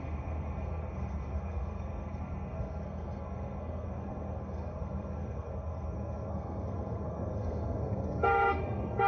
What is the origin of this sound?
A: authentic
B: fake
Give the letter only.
B